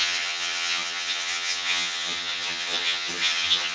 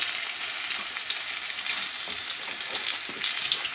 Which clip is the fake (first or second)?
first